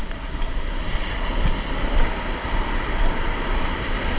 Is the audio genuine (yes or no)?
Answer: yes